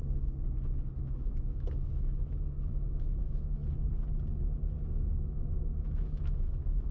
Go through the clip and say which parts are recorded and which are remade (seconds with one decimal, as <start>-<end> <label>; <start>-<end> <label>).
0.0-1.0 recorded; 1.0-3.6 remade; 3.6-5.2 recorded; 5.2-6.9 remade